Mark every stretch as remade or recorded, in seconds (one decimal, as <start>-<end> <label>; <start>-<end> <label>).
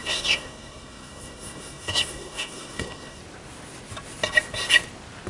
0.0-3.2 remade; 3.2-5.3 recorded